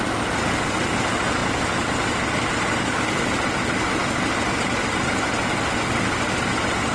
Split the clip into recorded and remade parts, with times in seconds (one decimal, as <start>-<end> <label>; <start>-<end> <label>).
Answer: 0.0-6.9 recorded